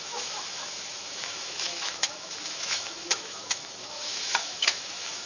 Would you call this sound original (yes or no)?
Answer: no